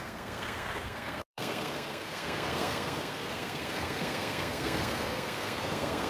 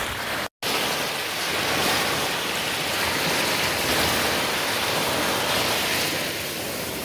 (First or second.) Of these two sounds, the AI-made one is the first